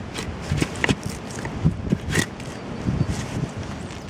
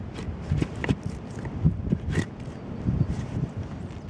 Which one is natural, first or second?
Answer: first